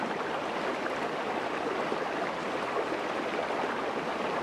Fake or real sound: real